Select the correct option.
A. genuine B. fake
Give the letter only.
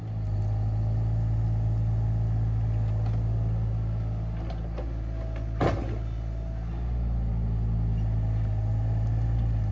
A